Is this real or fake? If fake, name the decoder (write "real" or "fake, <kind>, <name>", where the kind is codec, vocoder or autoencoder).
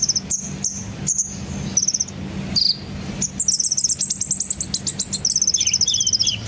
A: real